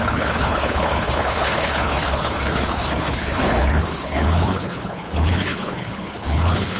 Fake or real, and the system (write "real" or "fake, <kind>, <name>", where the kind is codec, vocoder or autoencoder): fake, codec, HILCodec